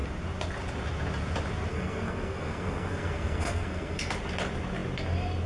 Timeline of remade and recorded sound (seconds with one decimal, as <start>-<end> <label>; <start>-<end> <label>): 0.0-1.7 recorded; 1.7-4.1 remade; 4.1-5.5 recorded